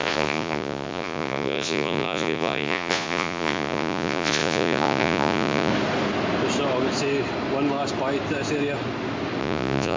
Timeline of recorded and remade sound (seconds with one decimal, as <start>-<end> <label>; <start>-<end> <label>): 0.0-5.7 remade; 5.7-9.4 recorded; 9.4-10.0 remade